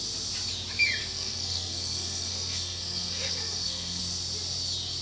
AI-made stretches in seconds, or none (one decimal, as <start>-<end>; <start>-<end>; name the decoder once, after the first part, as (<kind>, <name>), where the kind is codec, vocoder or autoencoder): 1.0-4.0 (codec, SNAC)